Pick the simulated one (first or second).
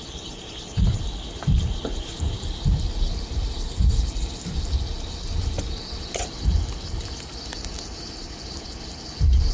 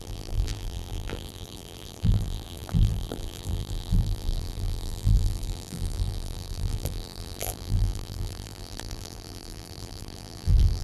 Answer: second